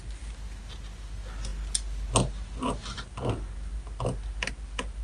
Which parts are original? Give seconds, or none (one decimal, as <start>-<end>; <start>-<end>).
0.0-5.0